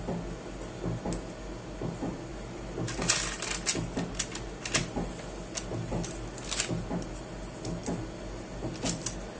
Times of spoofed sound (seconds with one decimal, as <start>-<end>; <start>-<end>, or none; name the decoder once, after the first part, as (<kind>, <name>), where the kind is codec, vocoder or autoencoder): none